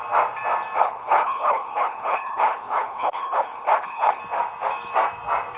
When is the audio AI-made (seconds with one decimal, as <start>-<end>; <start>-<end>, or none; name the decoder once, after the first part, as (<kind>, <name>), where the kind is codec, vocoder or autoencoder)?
0.8-4.2 (codec, HILCodec)